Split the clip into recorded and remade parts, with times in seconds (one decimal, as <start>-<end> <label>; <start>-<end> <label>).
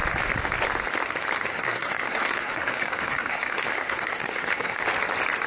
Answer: 0.0-1.5 recorded; 1.5-4.8 remade; 4.8-5.5 recorded